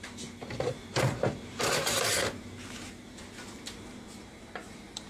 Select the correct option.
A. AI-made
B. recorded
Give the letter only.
A